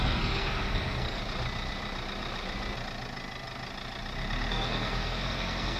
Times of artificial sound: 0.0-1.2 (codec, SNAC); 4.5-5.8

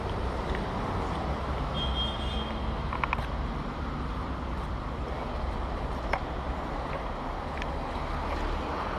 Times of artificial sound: none

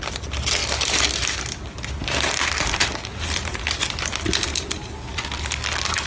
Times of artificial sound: none